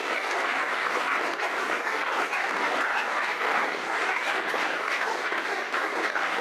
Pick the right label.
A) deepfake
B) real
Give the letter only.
A